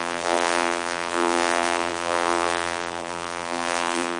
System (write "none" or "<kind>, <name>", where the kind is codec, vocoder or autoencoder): vocoder, BigVGAN v2